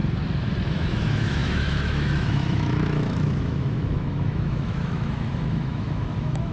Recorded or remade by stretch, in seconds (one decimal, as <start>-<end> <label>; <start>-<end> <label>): 0.0-0.7 recorded; 0.7-6.5 remade